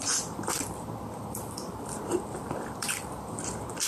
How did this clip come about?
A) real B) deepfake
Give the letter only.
B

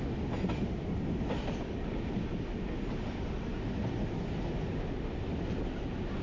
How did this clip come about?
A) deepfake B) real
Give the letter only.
B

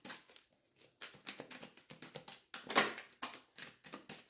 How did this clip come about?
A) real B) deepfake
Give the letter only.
A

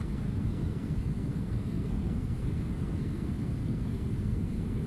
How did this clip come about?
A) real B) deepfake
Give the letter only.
B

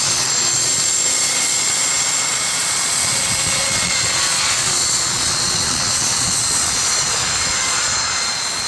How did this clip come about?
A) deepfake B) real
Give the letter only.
A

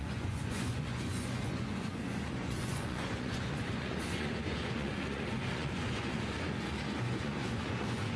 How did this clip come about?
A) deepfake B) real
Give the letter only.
A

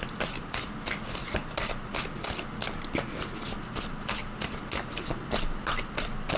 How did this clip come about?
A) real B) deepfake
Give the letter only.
A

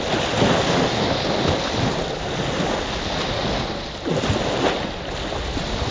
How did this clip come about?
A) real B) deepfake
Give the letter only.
A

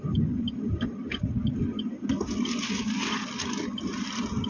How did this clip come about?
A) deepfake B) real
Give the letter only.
B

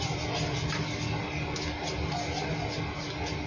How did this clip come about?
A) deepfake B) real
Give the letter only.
B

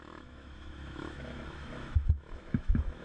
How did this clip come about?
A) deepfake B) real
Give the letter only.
A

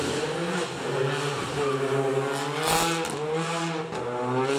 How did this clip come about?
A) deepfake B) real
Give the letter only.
B